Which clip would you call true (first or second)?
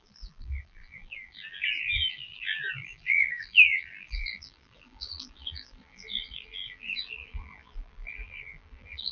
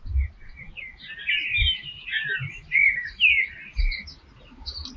second